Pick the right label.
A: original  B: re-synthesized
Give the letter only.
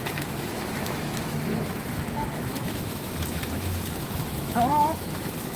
B